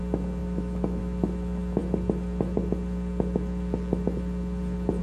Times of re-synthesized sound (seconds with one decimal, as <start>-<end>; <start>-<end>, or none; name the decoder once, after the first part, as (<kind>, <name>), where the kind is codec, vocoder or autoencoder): 0.4-1.0 (autoencoder, DAC-VAE)

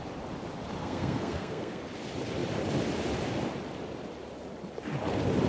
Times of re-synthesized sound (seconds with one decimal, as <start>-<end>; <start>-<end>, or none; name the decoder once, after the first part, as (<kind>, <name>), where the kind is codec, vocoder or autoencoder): 0.8-1.8 (codec, SNAC)